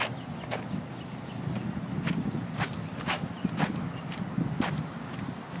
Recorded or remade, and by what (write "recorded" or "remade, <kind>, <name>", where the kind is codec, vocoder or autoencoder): recorded